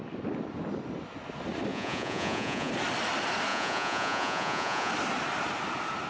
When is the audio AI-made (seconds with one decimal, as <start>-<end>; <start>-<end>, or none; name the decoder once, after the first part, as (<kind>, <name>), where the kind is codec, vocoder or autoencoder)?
1.7-2.7 (vocoder, Vocos); 3.5-4.9